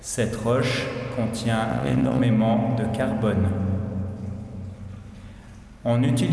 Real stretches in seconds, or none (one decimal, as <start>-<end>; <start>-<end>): 0.0-1.7; 2.2-6.3